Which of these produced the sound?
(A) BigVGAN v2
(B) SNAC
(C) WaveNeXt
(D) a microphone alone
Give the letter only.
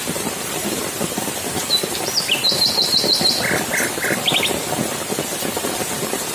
D